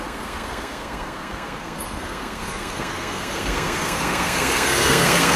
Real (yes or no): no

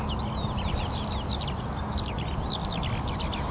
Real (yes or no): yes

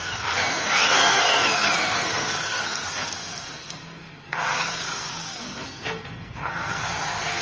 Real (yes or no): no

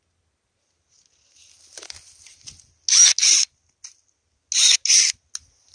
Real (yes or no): yes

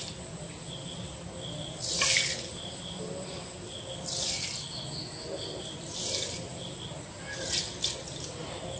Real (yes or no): yes